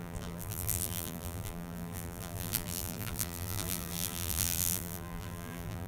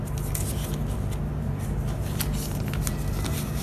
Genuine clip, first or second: second